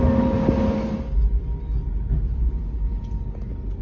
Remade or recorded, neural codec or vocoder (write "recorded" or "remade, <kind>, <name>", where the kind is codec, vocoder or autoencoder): recorded